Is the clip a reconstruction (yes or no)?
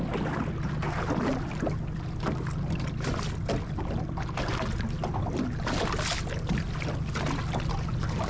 no